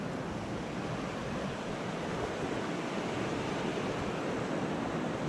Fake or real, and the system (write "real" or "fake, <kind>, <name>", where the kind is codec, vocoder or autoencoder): real